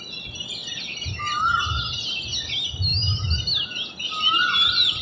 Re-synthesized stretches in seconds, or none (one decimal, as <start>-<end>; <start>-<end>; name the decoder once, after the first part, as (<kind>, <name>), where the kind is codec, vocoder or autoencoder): none

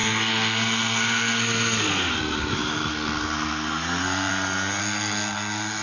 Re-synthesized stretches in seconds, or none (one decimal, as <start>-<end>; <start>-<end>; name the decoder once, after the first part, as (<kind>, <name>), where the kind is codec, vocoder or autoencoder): 0.0-4.3 (codec, SNAC); 4.8-5.8

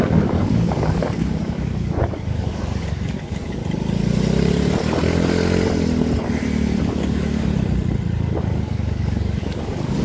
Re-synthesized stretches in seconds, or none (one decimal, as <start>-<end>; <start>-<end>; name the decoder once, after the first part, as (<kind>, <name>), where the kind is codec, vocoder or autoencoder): 0.0-3.6 (codec, DAC); 6.8-7.5; 8.4-10.0